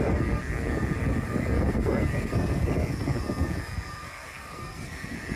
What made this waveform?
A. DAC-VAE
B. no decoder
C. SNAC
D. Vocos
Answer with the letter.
C